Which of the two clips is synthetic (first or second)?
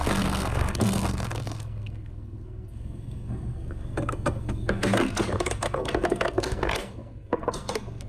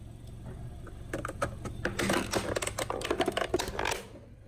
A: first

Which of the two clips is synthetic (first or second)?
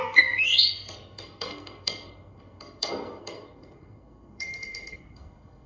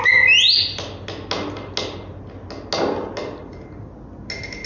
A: first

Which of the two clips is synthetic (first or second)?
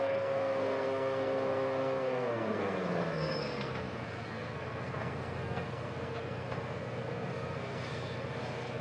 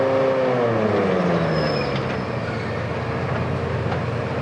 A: first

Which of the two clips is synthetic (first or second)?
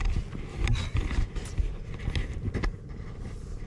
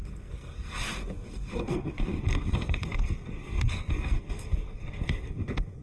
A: second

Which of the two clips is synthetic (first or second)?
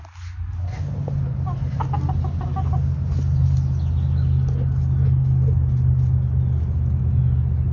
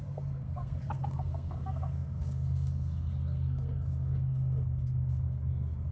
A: second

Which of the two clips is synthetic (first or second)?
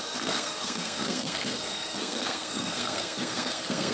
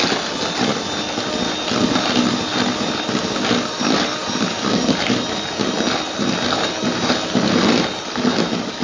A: first